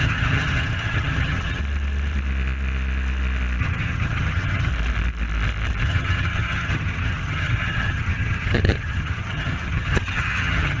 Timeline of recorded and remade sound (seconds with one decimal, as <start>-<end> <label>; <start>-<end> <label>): 0.0-1.6 remade; 1.6-3.6 recorded; 3.6-4.7 remade; 4.7-5.8 recorded; 5.8-10.8 remade